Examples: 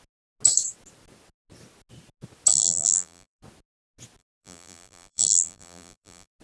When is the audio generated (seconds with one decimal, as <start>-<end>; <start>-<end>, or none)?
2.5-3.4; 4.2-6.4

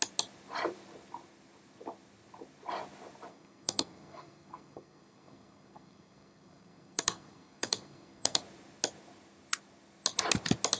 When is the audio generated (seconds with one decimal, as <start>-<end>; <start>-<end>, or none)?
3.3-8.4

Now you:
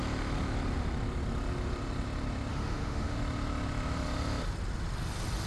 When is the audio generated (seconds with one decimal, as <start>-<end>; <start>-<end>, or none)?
2.5-3.2

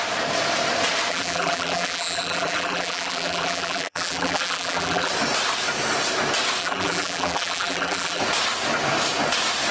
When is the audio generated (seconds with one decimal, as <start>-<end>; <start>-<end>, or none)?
1.1-5.1; 6.6-8.2

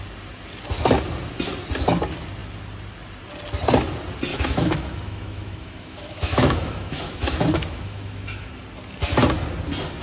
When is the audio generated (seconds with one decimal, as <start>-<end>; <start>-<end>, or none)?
4.3-8.5